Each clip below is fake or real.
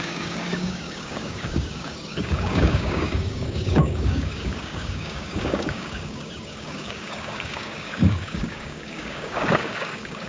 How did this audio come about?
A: fake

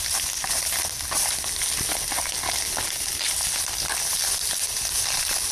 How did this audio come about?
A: real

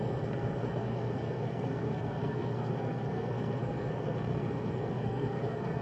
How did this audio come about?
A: fake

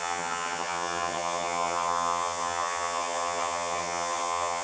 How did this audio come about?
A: fake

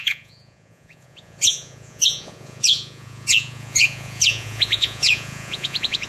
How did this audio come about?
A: fake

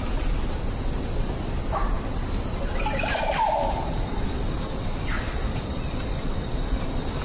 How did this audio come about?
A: real